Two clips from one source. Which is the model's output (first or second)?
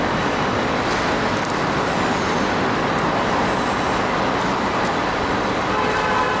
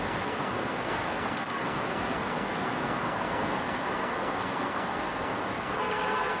second